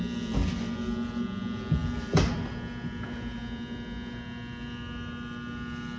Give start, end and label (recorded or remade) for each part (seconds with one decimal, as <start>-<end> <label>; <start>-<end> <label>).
0.0-6.0 recorded